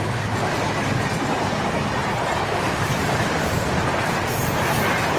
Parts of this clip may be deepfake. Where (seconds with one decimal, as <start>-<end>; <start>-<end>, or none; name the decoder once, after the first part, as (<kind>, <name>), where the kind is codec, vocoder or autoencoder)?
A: 2.0-5.2 (vocoder, BigVGAN v2)